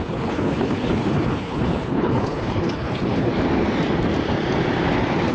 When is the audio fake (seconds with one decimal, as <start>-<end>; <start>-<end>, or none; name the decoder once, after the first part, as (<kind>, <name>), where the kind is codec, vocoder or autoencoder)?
0.0-3.3 (codec, HILCodec)